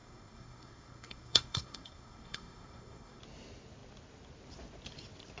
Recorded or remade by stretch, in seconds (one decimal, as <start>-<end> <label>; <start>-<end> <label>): 0.0-3.2 remade; 3.2-5.4 recorded